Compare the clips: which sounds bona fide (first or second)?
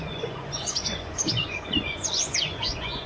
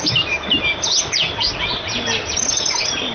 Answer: second